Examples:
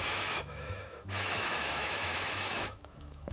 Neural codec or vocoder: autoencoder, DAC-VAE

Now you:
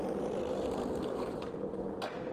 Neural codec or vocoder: none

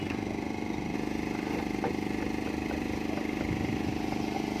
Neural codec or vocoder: none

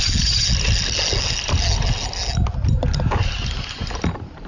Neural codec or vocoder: none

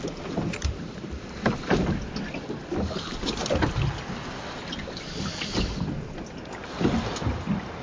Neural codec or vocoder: none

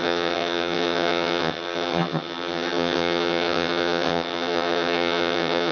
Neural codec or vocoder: vocoder, HiFi-GAN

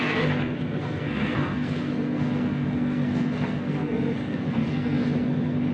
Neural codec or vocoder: codec, SNAC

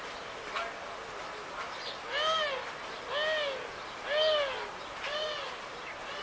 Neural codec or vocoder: none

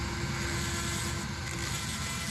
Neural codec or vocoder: none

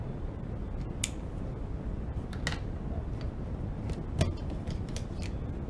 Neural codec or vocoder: none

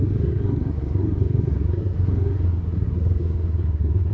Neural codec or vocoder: codec, SNAC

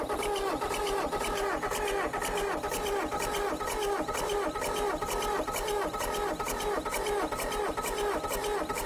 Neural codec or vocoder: none